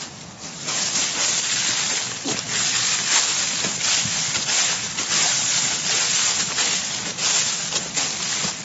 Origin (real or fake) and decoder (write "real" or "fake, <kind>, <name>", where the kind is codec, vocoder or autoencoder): real